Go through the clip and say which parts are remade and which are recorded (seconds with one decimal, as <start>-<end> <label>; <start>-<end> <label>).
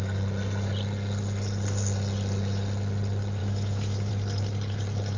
0.0-3.4 recorded; 3.4-4.1 remade; 4.1-5.2 recorded